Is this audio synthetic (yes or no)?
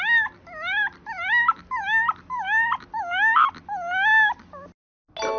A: no